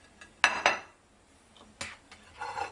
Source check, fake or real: real